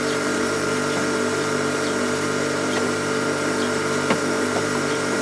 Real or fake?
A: fake